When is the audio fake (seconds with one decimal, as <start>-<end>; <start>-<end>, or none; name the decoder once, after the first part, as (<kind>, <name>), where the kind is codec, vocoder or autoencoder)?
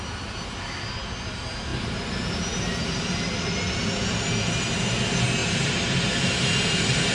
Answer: 5.4-6.5 (vocoder, BigVGAN v2)